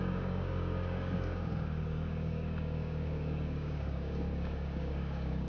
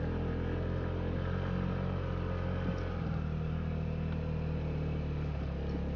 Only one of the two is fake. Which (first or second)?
first